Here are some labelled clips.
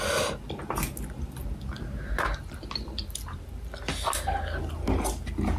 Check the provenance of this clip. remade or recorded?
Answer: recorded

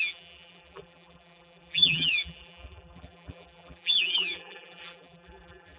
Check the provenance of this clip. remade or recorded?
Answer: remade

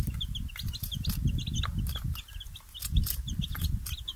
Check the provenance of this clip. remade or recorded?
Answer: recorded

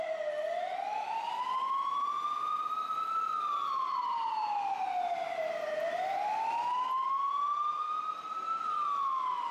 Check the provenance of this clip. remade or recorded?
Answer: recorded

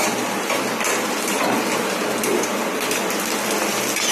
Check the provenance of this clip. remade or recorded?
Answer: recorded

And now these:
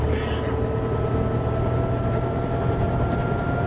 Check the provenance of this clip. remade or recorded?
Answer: recorded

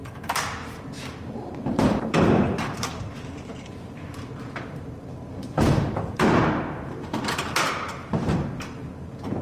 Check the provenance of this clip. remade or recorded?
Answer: remade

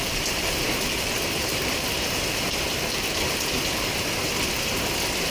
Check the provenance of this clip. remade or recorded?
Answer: recorded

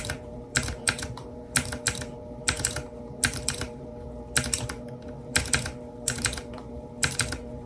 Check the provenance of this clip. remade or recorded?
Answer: remade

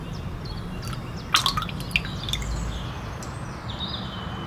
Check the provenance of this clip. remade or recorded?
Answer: recorded